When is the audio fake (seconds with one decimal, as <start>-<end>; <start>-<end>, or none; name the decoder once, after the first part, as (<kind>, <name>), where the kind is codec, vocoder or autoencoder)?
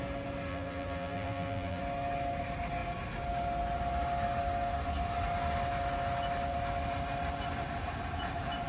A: 0.5-1.8 (vocoder, BigVGAN v2)